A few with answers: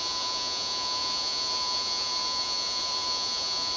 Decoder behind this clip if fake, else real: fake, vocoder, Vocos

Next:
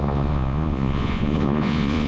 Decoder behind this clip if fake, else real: fake, vocoder, Vocos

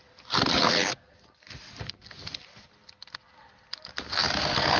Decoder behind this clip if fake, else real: real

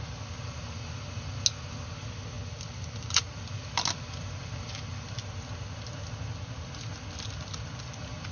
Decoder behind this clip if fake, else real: real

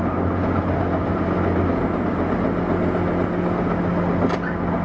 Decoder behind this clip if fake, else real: real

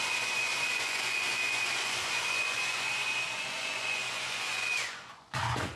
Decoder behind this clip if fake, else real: fake, vocoder, Vocos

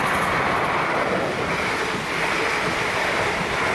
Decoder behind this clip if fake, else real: real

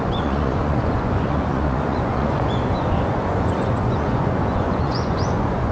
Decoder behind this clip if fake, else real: fake, vocoder, Vocos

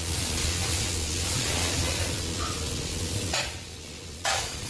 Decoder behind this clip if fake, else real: fake, vocoder, Vocos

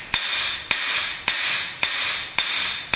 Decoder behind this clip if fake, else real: real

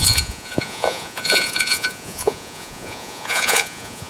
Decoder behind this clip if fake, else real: fake, vocoder, Vocos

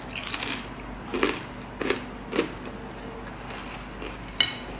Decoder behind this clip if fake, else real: real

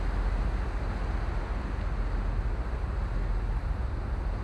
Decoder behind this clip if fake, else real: real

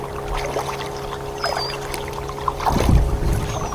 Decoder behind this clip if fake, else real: real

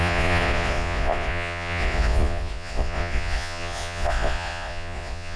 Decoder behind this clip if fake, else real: fake, vocoder, Vocos